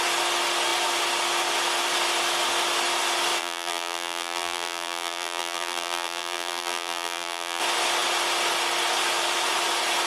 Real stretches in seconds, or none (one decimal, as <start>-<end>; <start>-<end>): 0.0-3.4; 7.6-10.1